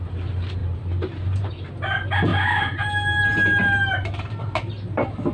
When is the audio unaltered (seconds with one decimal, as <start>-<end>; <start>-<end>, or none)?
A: 0.0-0.6; 1.7-2.3; 4.7-5.3